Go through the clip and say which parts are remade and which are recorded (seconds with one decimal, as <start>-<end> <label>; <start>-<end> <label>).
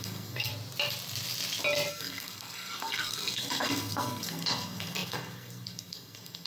0.0-0.5 remade; 0.5-1.9 recorded; 1.9-6.5 remade